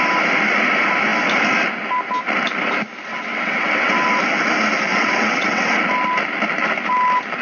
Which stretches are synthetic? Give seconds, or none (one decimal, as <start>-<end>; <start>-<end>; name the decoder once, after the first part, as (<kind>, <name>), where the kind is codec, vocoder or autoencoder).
3.1-4.1 (vocoder, WaveNeXt); 4.9-5.8